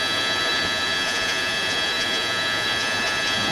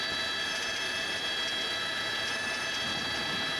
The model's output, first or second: first